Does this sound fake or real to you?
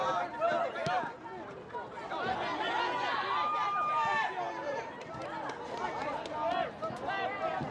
real